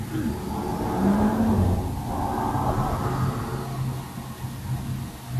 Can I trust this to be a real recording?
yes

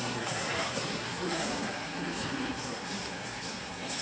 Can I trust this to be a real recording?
no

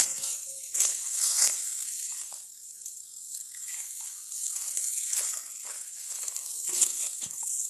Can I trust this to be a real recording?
no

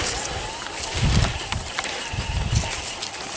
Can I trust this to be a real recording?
yes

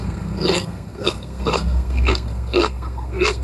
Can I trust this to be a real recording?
no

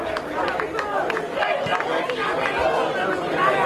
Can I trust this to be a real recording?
yes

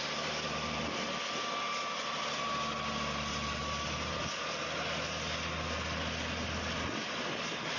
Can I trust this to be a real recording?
yes